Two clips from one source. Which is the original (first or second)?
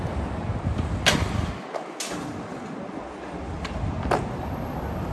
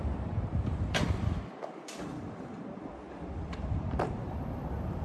first